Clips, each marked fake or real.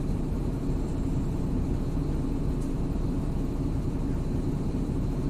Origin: fake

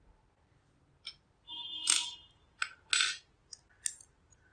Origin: real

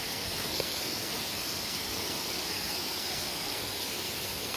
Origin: fake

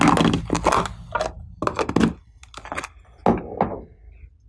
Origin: real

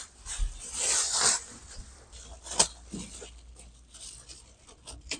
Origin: real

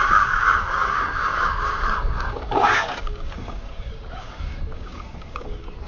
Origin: fake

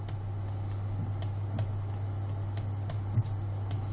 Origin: real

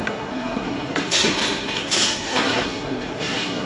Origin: fake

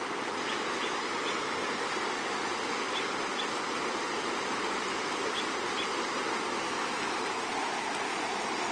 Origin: real